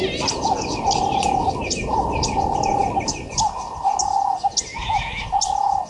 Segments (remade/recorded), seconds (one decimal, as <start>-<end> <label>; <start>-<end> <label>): 0.0-4.7 recorded; 4.7-5.2 remade; 5.2-5.9 recorded